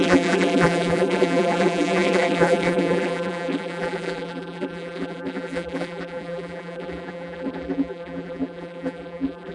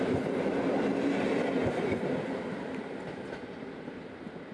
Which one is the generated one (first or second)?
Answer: first